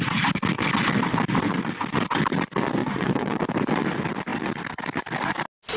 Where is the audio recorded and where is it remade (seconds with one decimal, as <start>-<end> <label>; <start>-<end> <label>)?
0.0-2.8 recorded; 2.8-3.4 remade; 3.4-5.8 recorded